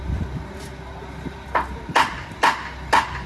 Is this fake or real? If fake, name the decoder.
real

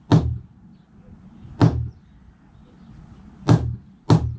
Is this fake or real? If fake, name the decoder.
real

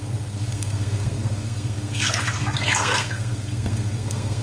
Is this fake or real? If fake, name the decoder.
fake, codec, SNAC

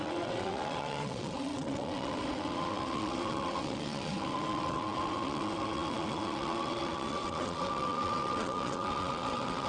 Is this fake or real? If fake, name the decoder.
fake, vocoder, WaveNeXt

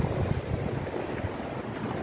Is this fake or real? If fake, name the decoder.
real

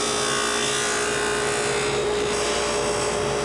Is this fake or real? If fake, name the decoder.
real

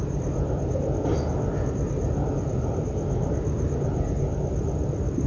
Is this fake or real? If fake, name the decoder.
real